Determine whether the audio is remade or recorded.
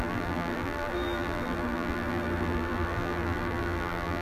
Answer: remade